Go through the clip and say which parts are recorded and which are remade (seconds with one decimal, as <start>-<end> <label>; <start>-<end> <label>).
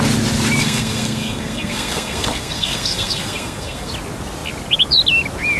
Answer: 0.0-0.6 recorded; 0.6-3.9 remade; 3.9-5.6 recorded